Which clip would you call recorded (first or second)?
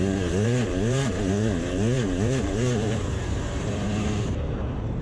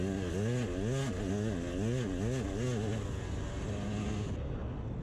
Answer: second